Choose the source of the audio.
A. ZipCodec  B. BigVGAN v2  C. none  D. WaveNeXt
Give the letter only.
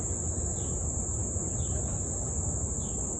C